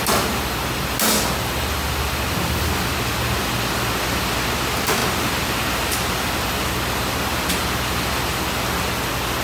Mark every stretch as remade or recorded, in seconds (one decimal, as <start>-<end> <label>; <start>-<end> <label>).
0.0-9.4 recorded

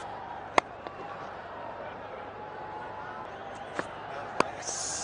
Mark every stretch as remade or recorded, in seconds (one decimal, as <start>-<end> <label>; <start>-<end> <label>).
0.0-2.2 remade; 2.2-5.0 recorded

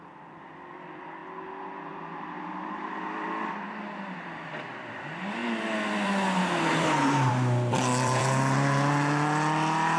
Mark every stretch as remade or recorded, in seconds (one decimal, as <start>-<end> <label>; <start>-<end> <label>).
0.0-1.2 remade; 1.2-2.5 recorded; 2.5-10.0 remade

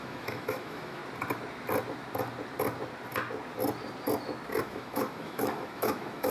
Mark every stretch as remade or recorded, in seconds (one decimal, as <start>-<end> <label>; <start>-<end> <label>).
0.0-1.0 remade; 1.0-4.6 recorded; 4.6-6.3 remade

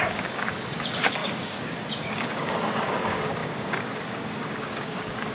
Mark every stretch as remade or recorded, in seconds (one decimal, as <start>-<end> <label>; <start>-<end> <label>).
0.0-5.3 remade